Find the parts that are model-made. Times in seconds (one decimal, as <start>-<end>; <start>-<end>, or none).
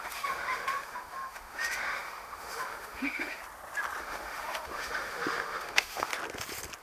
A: 0.0-3.4; 4.0-6.1